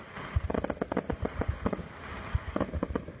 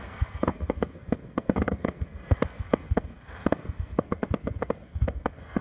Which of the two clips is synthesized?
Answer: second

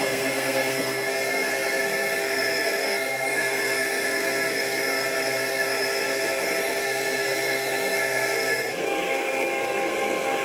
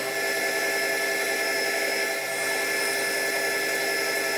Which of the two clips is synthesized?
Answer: first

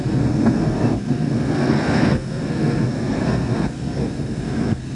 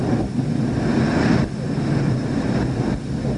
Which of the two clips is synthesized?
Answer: first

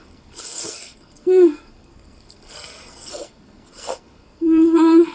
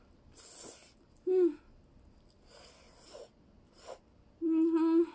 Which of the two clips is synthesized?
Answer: first